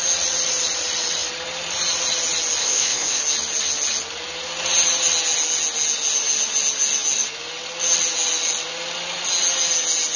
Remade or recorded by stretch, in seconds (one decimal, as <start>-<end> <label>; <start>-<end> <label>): 0.0-2.6 recorded; 2.6-3.2 remade; 3.2-10.2 recorded